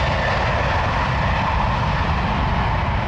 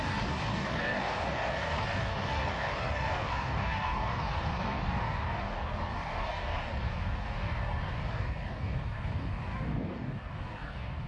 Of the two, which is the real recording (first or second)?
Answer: first